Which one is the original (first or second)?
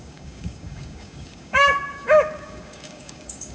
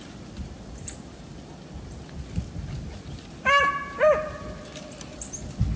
second